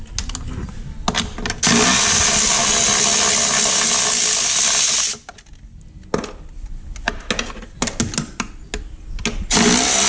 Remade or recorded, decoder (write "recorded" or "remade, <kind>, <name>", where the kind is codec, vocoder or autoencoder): recorded